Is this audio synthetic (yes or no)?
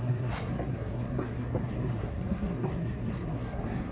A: yes